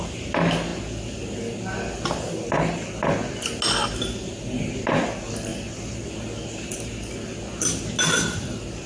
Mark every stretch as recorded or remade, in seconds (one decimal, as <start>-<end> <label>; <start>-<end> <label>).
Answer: 0.0-8.9 recorded